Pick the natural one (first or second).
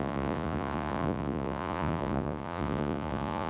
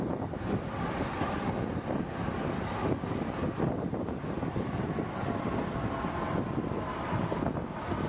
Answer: second